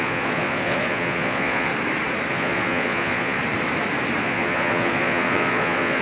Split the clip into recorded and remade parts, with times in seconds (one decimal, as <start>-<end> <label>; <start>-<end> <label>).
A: 0.0-1.7 remade; 1.7-2.3 recorded; 2.3-3.4 remade; 3.4-4.2 recorded; 4.2-6.0 remade